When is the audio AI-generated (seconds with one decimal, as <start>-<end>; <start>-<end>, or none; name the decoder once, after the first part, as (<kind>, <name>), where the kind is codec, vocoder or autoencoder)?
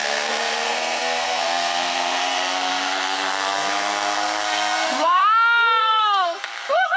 0.0-5.2 (codec, SNAC); 5.8-7.0